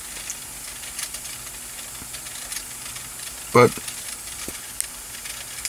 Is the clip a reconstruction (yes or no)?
no